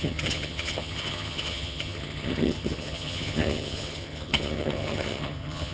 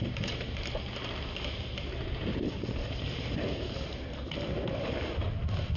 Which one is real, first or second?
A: second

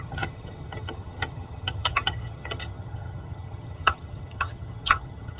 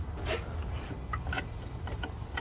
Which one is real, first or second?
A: second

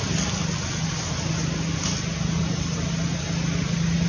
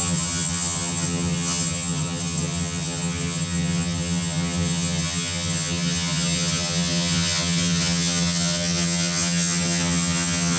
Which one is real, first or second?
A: first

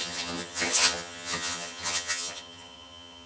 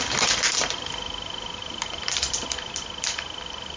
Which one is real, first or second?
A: second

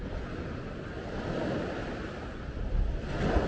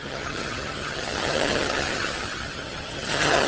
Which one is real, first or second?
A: first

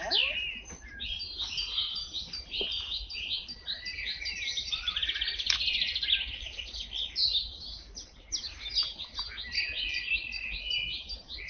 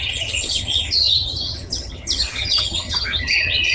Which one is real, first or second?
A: first